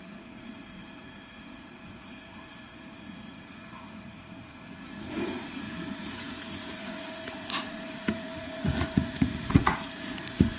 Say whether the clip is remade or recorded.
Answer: remade